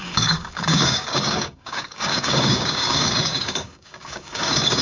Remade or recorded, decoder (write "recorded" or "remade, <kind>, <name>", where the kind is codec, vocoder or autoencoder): remade, codec, DAC